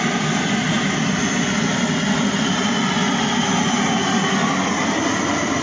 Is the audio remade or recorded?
recorded